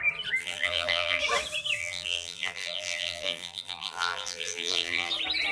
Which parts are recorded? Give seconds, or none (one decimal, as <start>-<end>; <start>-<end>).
0.0-0.4; 1.2-1.8; 5.1-5.5